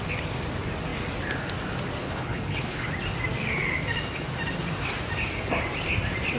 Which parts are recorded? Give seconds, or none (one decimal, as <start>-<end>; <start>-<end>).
0.0-2.0; 2.9-6.4